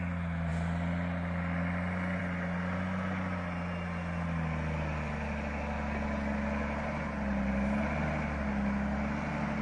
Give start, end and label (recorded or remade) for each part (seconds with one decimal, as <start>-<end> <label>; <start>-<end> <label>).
0.0-9.6 recorded